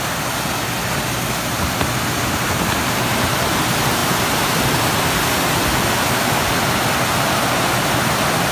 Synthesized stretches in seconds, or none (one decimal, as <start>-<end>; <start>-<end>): 4.0-5.5